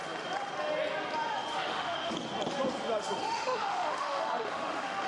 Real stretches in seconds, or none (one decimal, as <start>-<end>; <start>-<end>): 0.0-1.5; 2.1-3.2